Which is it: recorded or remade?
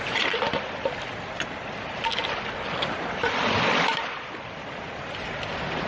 recorded